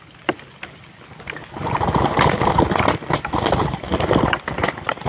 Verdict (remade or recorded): recorded